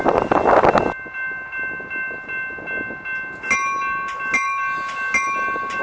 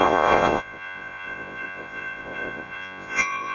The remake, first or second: second